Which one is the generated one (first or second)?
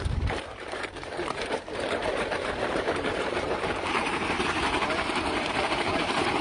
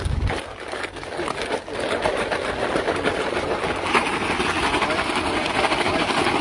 first